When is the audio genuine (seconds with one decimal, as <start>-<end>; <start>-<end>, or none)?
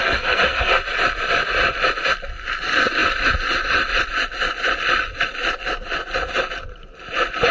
0.8-7.5